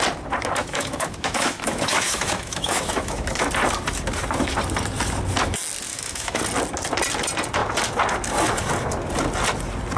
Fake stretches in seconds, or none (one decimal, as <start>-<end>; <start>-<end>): 0.6-3.5; 5.9-6.4